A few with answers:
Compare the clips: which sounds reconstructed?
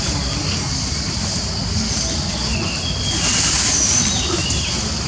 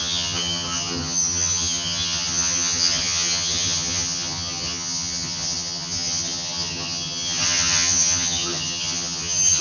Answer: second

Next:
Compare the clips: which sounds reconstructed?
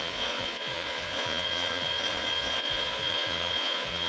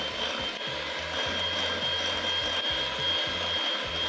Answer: first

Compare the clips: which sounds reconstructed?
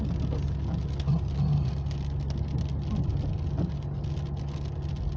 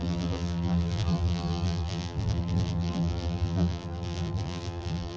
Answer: second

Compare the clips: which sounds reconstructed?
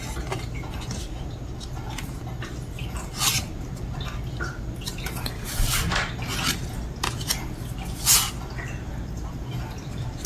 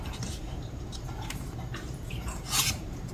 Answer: second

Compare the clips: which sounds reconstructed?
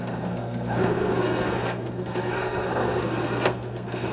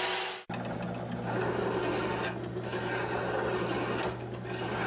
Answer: first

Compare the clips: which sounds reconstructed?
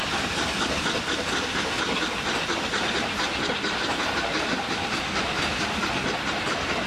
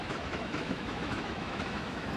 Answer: second